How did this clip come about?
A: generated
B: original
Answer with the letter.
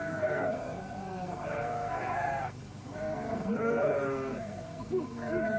A